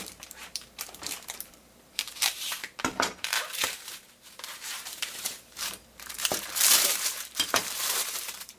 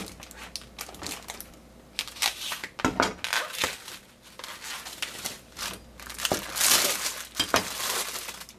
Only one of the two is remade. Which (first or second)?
first